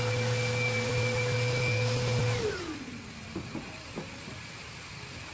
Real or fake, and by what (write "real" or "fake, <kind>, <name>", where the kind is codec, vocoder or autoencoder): real